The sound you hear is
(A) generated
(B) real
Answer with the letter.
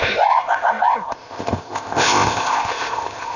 A